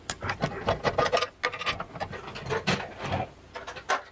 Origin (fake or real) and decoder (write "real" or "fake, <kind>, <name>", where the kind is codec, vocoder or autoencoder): real